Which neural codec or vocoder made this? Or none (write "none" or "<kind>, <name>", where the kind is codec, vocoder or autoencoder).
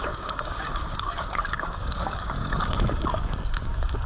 codec, DAC